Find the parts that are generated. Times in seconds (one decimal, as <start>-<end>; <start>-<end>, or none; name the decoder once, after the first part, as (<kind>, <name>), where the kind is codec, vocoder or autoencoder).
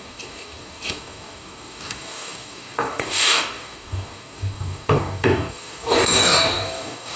0.0-7.2 (codec, DAC)